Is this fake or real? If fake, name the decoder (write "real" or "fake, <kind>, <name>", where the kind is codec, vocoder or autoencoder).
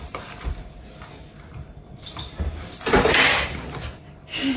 real